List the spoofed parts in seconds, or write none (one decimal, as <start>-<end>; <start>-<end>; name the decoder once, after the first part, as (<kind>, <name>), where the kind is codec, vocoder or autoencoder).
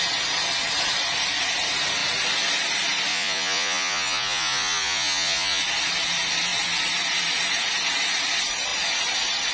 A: 3.1-5.6 (vocoder, Vocos)